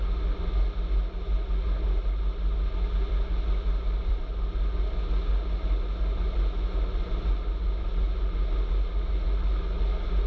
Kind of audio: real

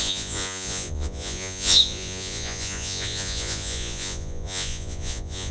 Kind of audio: fake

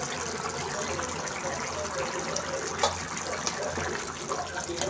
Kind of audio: real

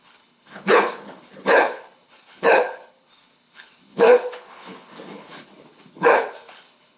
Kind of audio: fake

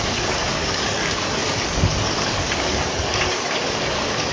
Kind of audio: fake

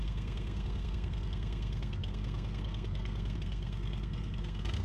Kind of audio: fake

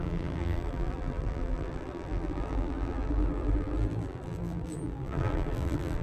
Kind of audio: fake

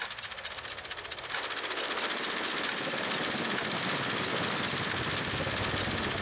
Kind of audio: real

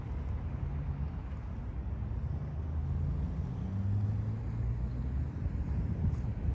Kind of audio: real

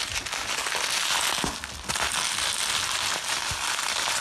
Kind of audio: real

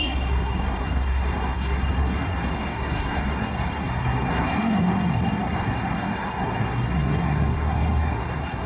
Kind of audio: fake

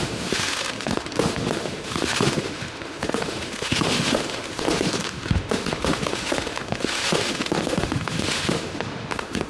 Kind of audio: fake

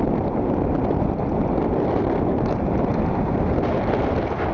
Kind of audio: real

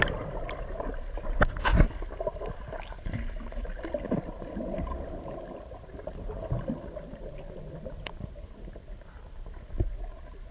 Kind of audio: real